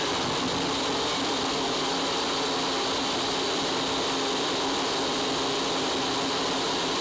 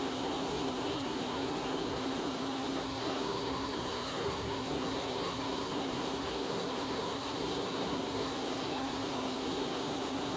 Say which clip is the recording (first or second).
first